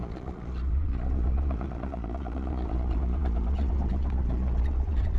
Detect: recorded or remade remade